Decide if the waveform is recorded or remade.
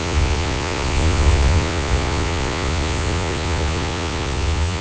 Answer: remade